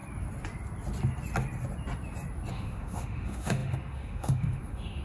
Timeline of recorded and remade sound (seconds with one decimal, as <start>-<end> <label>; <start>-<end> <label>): 0.0-2.5 recorded; 2.5-5.0 remade